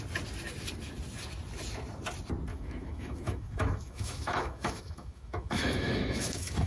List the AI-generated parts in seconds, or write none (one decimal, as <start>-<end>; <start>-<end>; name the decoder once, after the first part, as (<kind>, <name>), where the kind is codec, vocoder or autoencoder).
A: 2.5-6.7 (autoencoder, DAC-VAE)